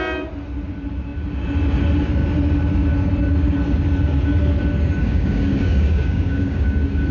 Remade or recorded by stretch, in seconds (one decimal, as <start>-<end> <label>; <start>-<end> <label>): 0.0-5.0 recorded; 5.0-7.1 remade

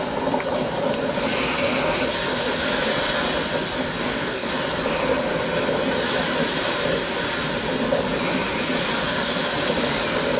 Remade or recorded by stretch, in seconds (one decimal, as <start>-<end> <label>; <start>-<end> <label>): 0.0-4.0 recorded; 4.0-4.5 remade; 4.5-10.4 recorded

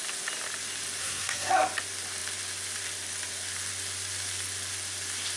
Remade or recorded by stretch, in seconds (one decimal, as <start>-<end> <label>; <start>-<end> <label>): 0.0-1.0 recorded; 1.0-1.5 remade; 1.5-5.4 recorded

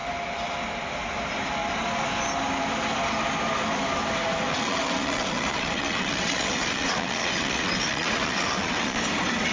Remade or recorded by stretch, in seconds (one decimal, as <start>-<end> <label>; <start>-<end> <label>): 0.0-4.5 recorded; 4.5-9.0 remade; 9.0-9.5 recorded

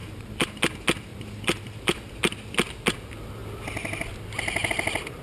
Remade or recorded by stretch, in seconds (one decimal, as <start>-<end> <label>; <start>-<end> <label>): 0.0-0.6 remade; 0.6-1.1 recorded; 1.1-2.1 remade; 2.1-5.2 recorded

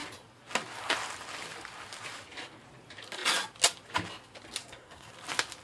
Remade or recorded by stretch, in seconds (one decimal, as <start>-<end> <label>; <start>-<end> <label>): 0.0-4.6 recorded; 4.6-5.1 remade; 5.1-5.6 recorded

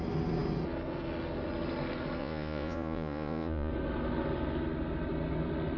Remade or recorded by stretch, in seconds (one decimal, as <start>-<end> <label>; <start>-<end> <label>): 0.0-2.2 recorded; 2.2-3.7 remade; 3.7-5.8 recorded